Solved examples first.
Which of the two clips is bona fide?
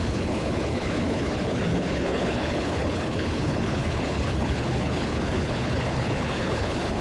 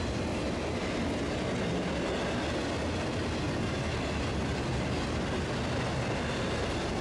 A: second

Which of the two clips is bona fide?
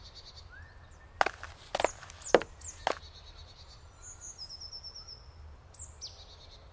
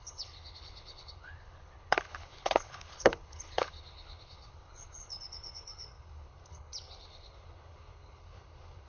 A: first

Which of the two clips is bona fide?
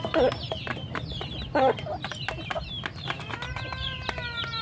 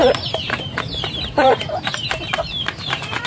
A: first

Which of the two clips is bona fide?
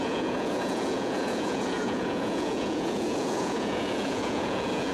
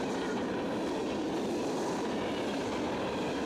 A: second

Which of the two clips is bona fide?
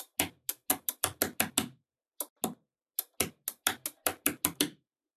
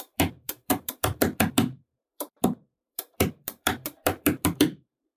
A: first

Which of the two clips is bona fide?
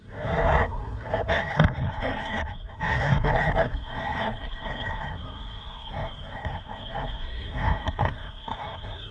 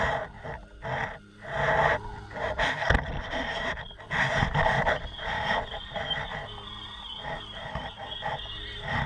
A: second